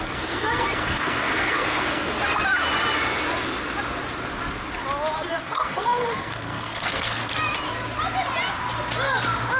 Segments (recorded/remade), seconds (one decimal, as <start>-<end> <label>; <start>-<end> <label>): 0.0-2.1 remade; 2.1-5.4 recorded; 5.4-7.2 remade; 7.2-9.6 recorded